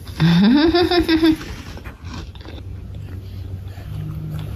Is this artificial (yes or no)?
no